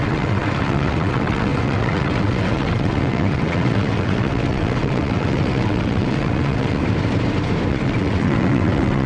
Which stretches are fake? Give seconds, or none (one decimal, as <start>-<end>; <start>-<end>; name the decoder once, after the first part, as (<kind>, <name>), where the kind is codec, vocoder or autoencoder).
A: 0.0-6.8 (vocoder, WaveNeXt); 7.7-9.1